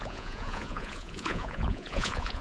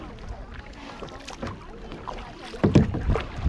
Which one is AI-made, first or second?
first